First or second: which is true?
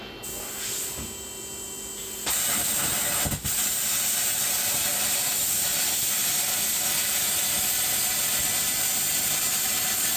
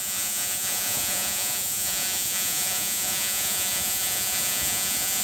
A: first